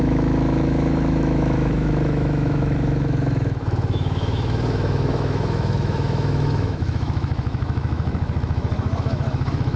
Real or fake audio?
fake